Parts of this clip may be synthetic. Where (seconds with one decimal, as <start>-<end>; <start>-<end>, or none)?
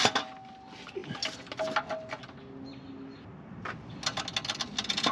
none